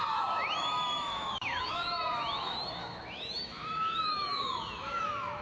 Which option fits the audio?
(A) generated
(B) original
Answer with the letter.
A